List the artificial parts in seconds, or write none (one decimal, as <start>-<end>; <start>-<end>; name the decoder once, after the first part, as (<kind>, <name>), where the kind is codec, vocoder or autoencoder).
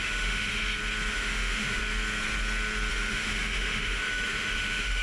0.0-0.6 (autoencoder, DAC-VAE); 1.1-1.8; 2.9-5.0